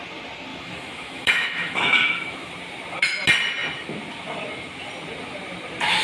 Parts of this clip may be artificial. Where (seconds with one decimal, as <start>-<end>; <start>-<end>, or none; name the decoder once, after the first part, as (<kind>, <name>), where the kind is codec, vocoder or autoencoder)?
0.5-2.5 (autoencoder, DAC-VAE)